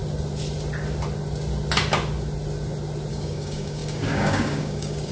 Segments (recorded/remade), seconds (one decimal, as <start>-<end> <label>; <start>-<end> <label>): 0.0-3.1 recorded; 3.1-5.1 remade